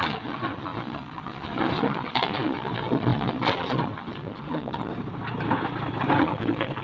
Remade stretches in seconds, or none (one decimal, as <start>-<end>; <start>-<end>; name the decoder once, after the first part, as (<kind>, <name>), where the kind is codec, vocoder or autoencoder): 0.0-4.9 (vocoder, Vocos); 6.2-6.8